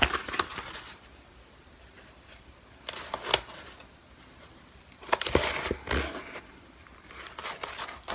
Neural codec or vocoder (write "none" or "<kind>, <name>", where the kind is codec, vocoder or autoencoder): none